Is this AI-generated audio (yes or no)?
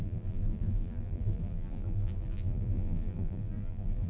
yes